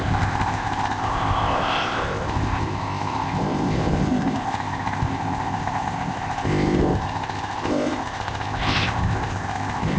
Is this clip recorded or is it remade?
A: remade